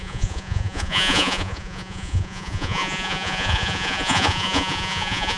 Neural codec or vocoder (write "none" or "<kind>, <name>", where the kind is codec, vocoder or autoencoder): vocoder, Vocos